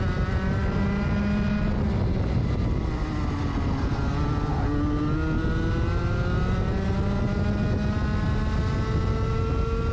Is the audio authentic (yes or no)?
yes